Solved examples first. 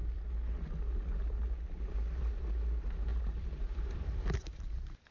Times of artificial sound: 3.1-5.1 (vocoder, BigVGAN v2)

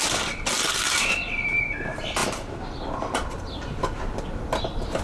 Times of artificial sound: 2.2-4.0 (vocoder, BigVGAN v2)

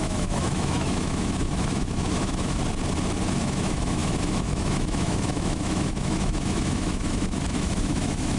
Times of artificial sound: 0.0-2.6 (autoencoder, DAC-VAE); 3.4-8.4

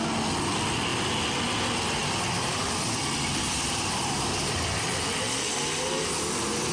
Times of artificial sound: none

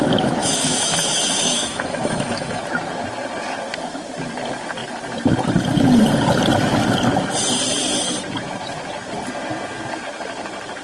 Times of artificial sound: 0.4-2.6 (autoencoder, DAC-VAE)